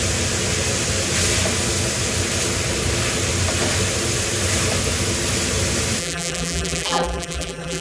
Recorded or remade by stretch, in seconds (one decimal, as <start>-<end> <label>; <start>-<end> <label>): 0.0-6.0 recorded; 6.0-7.8 remade